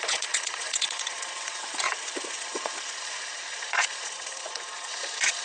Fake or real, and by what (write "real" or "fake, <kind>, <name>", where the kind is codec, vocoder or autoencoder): fake, vocoder, Vocos